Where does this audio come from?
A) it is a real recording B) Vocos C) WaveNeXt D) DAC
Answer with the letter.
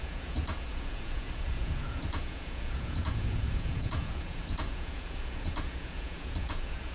B